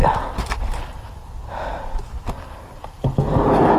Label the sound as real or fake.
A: real